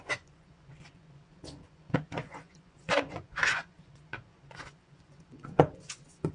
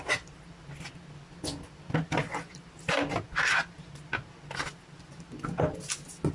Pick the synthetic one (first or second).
first